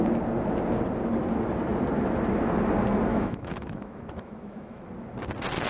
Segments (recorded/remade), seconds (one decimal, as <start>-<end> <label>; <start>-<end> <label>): 0.0-3.1 recorded; 3.1-4.8 remade; 4.8-5.7 recorded